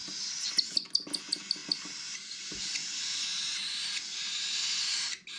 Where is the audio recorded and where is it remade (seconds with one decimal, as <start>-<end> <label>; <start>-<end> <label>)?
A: 0.0-5.4 recorded